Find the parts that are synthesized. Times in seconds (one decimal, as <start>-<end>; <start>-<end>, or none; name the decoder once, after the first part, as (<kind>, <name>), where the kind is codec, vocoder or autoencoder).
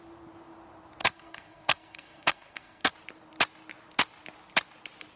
1.0-2.9 (codec, SNAC)